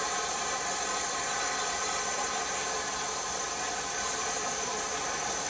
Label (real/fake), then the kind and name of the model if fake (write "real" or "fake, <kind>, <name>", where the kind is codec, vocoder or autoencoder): real